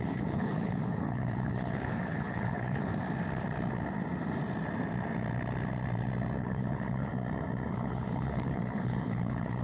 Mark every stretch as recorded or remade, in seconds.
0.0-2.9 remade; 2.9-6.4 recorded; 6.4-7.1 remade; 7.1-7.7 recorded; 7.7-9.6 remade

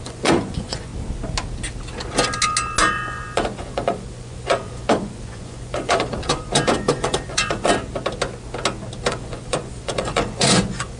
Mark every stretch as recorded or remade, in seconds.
0.0-0.9 remade; 0.9-2.9 recorded; 2.9-7.7 remade; 7.7-9.1 recorded; 9.1-11.0 remade